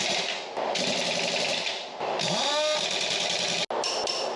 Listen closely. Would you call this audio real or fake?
real